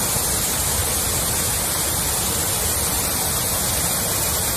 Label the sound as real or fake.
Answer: real